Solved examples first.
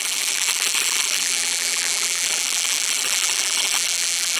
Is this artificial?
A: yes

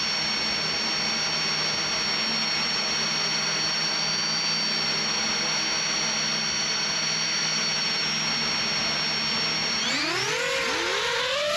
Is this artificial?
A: no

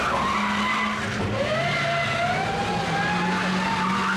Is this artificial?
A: no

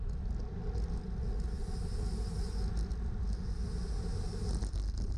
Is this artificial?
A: no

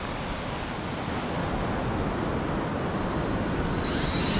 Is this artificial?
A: no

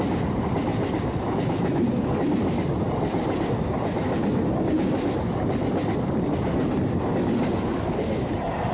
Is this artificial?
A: yes